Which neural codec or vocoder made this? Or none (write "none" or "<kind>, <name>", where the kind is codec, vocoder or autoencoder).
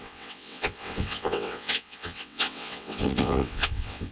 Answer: vocoder, WaveNeXt